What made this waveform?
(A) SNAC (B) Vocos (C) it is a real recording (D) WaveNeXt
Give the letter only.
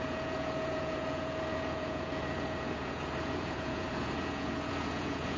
B